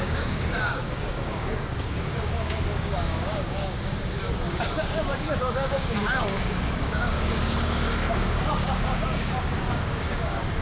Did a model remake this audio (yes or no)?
yes